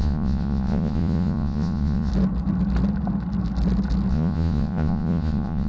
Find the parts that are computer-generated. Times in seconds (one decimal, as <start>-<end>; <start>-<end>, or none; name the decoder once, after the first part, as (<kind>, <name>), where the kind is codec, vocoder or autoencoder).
0.0-2.1 (vocoder, Vocos); 4.1-5.7